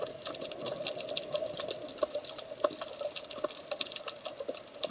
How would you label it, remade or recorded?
recorded